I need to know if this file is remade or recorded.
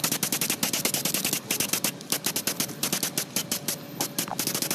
recorded